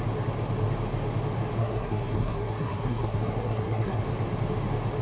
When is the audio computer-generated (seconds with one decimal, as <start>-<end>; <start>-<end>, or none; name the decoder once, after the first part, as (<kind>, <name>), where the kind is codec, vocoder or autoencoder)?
1.6-4.0 (codec, SNAC)